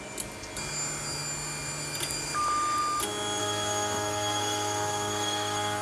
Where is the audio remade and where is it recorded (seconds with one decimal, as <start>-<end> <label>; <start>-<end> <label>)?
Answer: 0.0-3.4 recorded; 3.4-5.8 remade